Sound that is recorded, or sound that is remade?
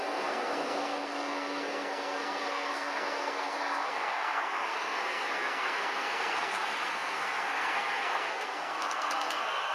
remade